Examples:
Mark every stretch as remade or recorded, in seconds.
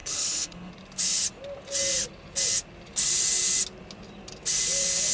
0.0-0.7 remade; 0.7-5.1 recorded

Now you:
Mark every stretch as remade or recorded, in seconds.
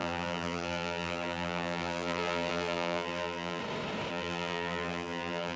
0.0-3.6 remade; 3.6-4.1 recorded; 4.1-5.6 remade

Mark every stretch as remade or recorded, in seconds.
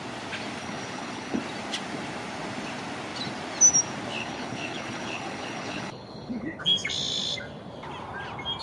0.0-0.6 recorded; 0.6-1.4 remade; 1.4-4.2 recorded; 4.2-6.6 remade; 6.6-8.6 recorded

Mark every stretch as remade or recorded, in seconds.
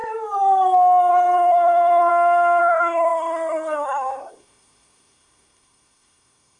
0.0-1.1 recorded; 1.1-2.1 remade; 2.1-2.6 recorded; 2.6-6.6 remade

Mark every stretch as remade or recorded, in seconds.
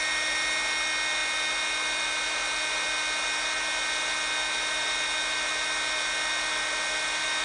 0.0-7.4 recorded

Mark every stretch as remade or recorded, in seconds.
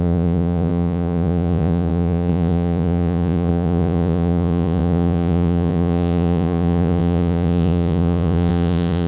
0.0-9.1 remade